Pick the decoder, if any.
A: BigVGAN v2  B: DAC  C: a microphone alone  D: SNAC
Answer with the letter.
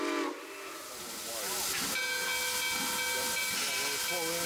C